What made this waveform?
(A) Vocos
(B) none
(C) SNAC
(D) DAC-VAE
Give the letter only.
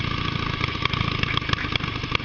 B